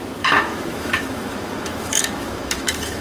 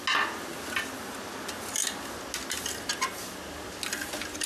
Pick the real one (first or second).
second